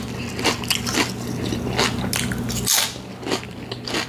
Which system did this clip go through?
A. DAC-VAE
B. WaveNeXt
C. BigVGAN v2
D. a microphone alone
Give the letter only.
D